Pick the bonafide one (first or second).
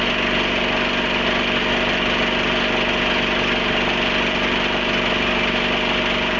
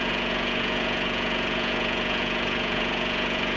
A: first